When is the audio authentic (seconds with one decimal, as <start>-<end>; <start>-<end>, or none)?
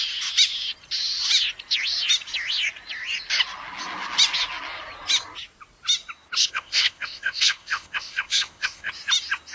0.0-6.4; 8.9-9.5